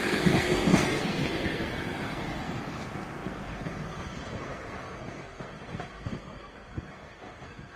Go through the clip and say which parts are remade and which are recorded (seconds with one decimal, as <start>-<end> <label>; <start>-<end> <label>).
0.0-7.8 remade